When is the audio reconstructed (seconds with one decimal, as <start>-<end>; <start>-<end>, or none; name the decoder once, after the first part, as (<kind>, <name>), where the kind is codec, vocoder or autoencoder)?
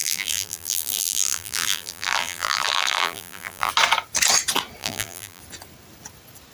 0.0-3.7 (vocoder, BigVGAN v2); 4.8-5.4